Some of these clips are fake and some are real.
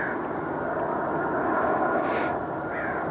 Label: real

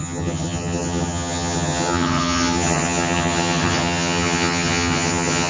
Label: fake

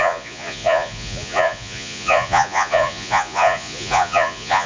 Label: fake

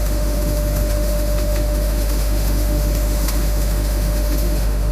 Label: fake